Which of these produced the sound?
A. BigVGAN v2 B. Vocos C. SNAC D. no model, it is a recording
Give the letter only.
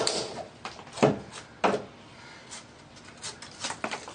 D